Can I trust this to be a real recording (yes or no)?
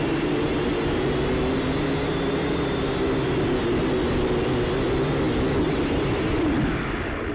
yes